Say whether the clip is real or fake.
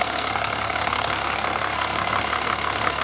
fake